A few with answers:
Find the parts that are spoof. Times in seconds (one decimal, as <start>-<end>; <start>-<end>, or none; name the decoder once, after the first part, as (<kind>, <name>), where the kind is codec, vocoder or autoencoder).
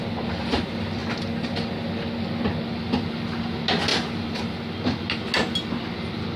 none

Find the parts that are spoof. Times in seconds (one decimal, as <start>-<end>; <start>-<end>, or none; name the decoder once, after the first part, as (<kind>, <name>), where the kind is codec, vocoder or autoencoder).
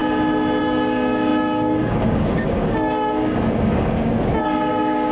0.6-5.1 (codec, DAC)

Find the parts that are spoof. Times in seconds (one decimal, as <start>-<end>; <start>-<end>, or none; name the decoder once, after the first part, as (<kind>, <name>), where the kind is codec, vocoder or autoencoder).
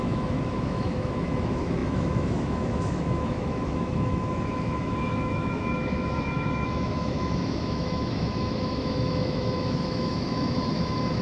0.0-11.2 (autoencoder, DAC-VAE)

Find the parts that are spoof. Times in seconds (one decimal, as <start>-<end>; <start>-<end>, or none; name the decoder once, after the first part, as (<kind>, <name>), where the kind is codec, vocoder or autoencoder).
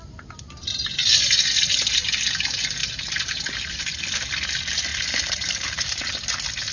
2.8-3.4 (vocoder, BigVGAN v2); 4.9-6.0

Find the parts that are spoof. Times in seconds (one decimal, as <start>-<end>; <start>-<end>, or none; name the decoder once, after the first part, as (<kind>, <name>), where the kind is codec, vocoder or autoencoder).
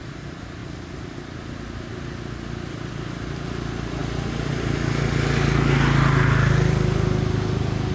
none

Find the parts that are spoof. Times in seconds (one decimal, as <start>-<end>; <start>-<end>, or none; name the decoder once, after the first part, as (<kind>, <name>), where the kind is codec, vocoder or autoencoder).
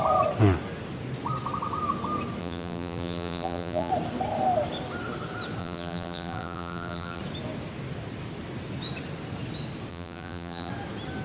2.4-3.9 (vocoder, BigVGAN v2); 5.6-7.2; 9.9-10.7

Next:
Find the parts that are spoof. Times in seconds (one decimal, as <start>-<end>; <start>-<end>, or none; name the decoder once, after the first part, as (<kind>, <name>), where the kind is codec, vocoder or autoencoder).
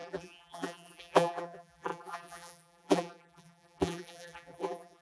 0.0-5.0 (vocoder, BigVGAN v2)